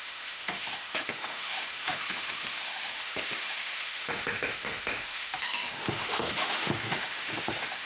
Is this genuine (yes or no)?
no